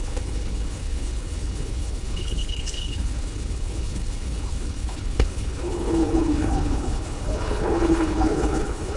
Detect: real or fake fake